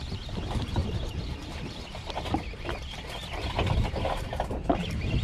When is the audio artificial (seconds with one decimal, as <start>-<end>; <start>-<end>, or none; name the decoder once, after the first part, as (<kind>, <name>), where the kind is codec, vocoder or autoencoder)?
none